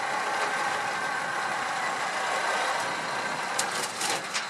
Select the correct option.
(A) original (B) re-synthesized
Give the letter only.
A